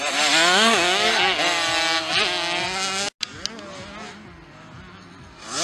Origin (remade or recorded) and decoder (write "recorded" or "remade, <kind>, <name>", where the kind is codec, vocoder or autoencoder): recorded